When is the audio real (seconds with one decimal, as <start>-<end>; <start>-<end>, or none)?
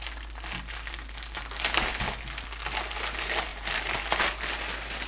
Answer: 0.0-3.5; 4.3-5.1